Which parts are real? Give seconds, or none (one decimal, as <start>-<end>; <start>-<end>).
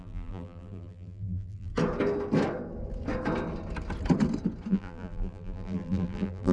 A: 1.7-4.7